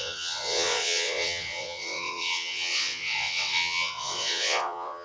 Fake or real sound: fake